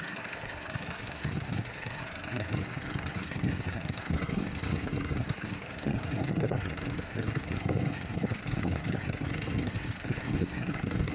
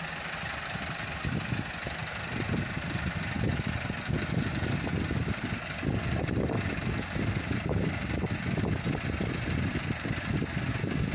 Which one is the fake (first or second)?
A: first